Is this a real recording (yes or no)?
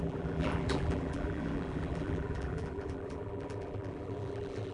no